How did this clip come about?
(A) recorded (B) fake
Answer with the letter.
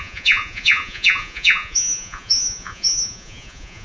B